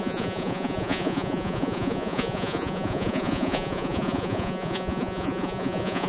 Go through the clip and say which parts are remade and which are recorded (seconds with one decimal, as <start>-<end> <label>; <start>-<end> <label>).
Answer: 0.0-6.1 remade